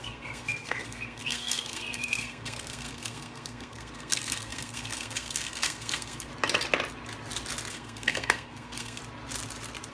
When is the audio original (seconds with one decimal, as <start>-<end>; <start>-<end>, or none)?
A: 6.3-7.7; 9.0-9.9